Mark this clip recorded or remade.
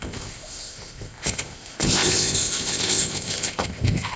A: remade